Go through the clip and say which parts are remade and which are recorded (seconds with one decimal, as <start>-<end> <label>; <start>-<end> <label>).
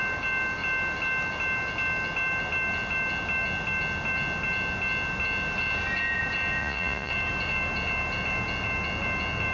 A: 0.0-6.6 recorded; 6.6-7.1 remade; 7.1-9.5 recorded